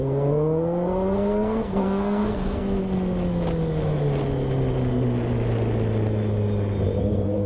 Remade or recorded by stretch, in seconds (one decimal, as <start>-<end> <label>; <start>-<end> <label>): 0.0-2.8 remade; 2.8-7.0 recorded; 7.0-7.5 remade

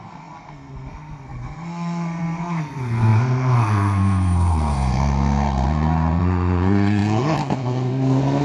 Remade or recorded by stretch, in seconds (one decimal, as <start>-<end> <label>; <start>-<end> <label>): 0.0-8.4 remade

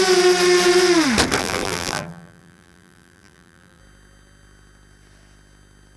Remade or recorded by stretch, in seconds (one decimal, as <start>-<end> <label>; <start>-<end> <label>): 0.0-1.4 recorded; 1.4-3.8 remade; 3.8-6.0 recorded

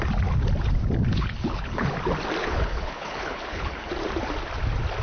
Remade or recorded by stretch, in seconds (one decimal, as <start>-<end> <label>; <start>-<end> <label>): 0.0-1.1 recorded; 1.1-2.0 remade; 2.0-2.4 recorded; 2.4-3.9 remade; 3.9-5.0 recorded